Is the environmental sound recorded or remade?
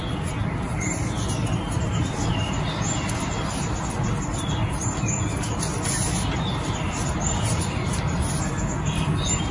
recorded